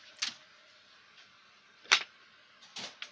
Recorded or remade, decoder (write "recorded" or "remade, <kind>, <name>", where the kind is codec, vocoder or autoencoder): recorded